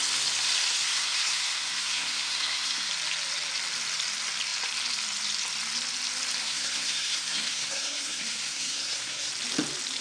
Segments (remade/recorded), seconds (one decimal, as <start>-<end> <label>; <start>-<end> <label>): 0.0-0.7 recorded; 0.7-2.9 remade; 2.9-6.4 recorded; 6.4-9.3 remade; 9.3-10.0 recorded